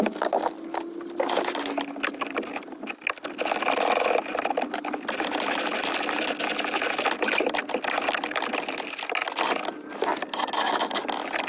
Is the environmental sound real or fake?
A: real